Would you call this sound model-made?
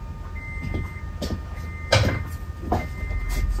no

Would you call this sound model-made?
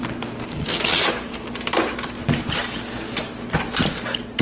no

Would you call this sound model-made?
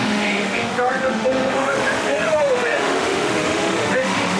yes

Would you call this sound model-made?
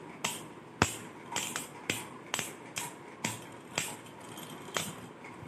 no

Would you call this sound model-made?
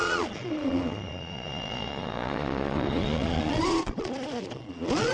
yes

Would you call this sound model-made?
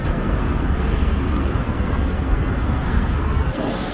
yes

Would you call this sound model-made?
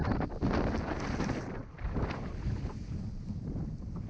no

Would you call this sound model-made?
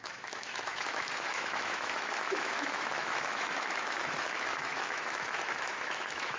yes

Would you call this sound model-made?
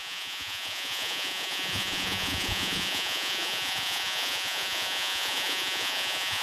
yes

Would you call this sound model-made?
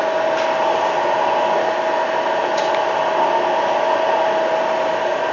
no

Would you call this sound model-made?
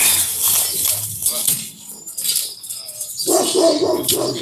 no